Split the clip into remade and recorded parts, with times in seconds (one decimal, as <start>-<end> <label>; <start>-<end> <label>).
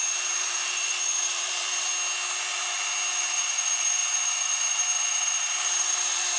0.0-1.9 remade; 1.9-3.1 recorded; 3.1-6.4 remade